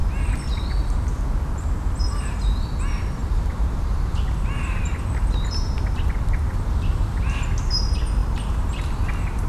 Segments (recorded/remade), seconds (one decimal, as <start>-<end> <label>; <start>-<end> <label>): 0.0-3.2 recorded; 3.2-7.4 remade; 7.4-8.2 recorded; 8.2-9.5 remade